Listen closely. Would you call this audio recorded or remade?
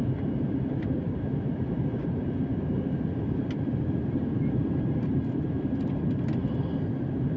remade